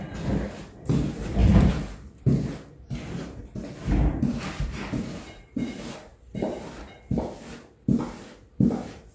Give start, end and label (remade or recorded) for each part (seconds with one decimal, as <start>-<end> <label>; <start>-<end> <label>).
0.0-1.4 recorded; 1.4-3.4 remade; 3.4-3.8 recorded; 3.8-6.8 remade; 6.8-9.1 recorded